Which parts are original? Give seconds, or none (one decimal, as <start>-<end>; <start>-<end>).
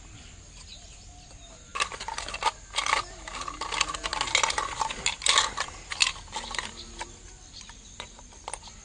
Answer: 0.0-8.8